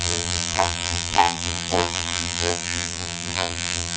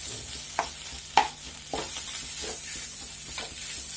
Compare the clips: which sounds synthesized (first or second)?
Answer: first